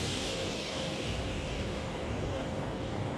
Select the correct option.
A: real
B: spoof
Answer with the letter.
B